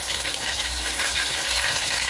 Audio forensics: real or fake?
fake